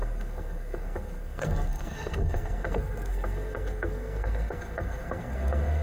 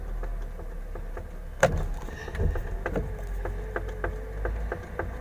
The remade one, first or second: first